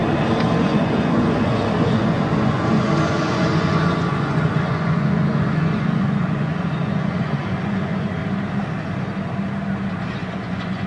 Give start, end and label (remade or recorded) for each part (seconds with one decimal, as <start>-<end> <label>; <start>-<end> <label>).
0.0-0.6 recorded; 0.6-8.2 remade; 8.2-10.1 recorded; 10.1-10.9 remade